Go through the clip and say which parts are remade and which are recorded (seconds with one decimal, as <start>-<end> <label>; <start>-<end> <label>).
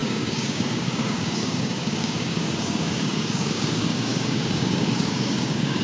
0.0-5.8 remade